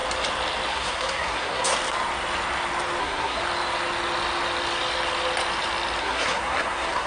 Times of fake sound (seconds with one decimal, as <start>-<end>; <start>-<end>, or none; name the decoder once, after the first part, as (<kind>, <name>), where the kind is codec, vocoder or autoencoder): 0.7-1.7 (codec, SNAC); 3.0-3.4; 6.0-7.1